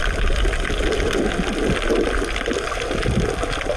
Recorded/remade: recorded